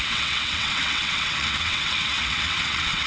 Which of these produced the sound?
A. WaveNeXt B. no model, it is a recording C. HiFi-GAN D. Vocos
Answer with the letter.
A